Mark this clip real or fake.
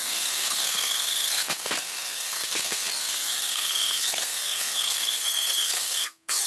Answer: fake